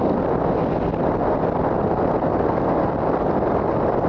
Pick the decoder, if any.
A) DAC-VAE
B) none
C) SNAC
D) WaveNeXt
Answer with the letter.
B